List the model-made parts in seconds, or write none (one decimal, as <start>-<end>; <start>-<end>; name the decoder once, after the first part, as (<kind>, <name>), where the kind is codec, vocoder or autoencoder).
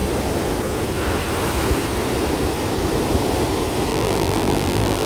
3.9-5.1 (vocoder, BigVGAN v2)